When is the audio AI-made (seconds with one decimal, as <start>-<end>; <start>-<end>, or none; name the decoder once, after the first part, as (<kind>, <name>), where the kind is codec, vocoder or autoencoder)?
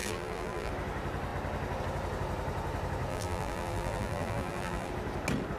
0.0-0.7 (vocoder, BigVGAN v2); 3.1-4.9